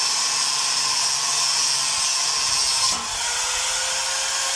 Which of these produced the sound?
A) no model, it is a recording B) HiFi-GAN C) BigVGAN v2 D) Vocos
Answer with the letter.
A